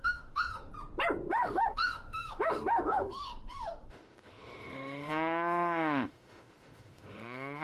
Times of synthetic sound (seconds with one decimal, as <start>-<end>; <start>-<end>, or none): 0.0-0.7; 1.3-7.6